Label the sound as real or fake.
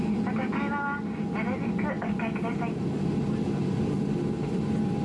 real